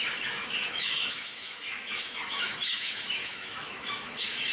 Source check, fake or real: fake